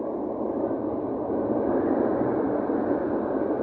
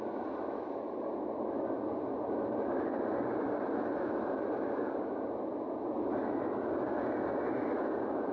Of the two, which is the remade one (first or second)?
first